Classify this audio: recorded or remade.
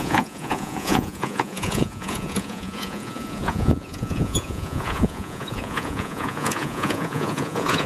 remade